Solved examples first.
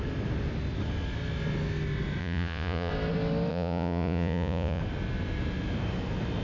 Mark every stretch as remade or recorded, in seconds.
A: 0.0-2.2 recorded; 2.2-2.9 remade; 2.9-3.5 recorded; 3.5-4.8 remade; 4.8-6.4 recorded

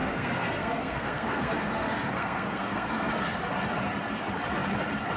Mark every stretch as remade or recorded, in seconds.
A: 0.0-3.1 remade; 3.1-5.2 recorded

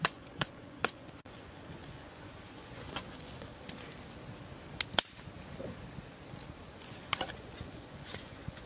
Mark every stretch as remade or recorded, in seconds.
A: 0.0-3.5 remade; 3.5-6.8 recorded; 6.8-8.7 remade

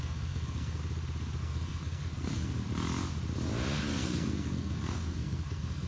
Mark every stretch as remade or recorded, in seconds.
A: 0.0-0.8 remade; 0.8-1.4 recorded; 1.4-2.6 remade; 2.6-3.9 recorded; 3.9-5.9 remade